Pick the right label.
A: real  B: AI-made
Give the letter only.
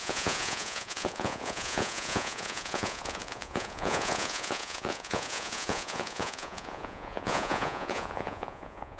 B